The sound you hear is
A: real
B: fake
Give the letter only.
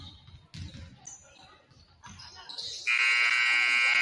A